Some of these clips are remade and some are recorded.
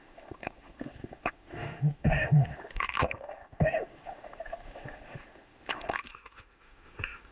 remade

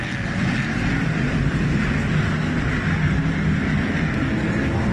recorded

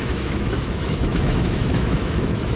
remade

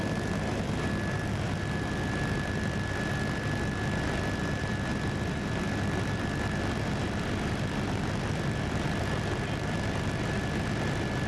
recorded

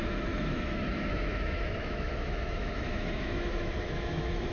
remade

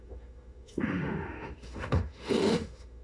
remade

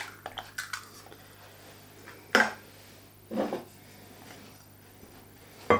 recorded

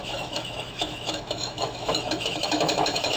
remade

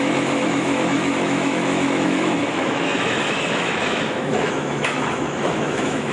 remade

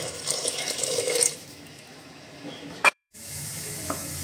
remade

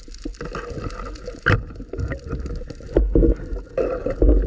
recorded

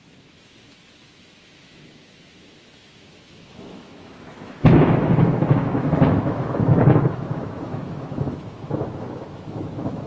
remade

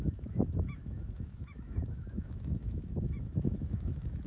remade